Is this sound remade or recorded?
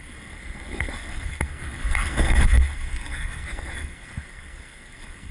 remade